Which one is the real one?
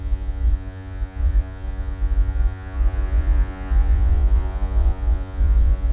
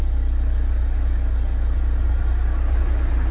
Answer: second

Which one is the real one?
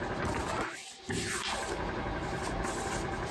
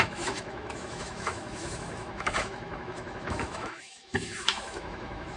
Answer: first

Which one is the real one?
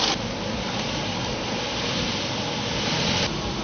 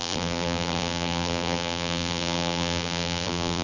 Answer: first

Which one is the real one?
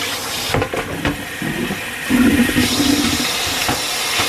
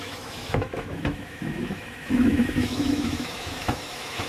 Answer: first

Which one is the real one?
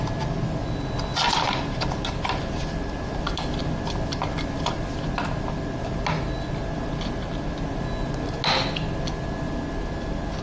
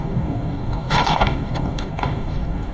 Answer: first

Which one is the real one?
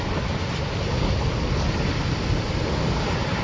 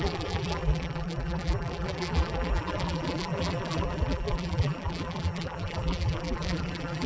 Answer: first